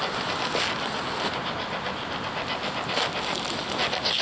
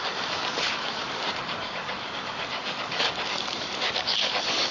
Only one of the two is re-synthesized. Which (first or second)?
second